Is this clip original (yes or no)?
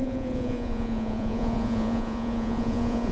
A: no